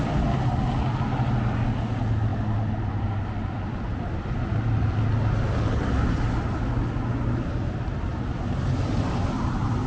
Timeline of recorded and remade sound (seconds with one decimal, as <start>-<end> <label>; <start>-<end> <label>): 0.0-9.9 recorded